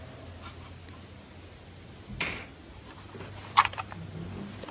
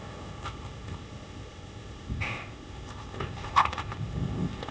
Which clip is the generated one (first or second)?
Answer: second